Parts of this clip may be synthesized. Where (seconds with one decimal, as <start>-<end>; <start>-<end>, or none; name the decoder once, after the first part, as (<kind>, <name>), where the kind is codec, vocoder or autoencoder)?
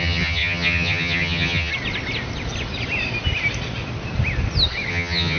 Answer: 0.0-1.7 (vocoder, HiFi-GAN); 4.9-5.4